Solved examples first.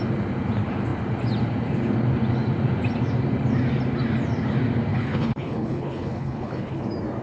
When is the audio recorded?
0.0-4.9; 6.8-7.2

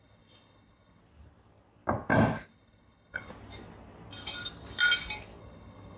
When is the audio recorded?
1.0-2.5; 3.3-5.4